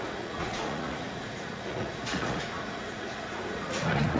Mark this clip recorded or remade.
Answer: remade